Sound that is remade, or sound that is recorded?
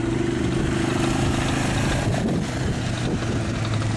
recorded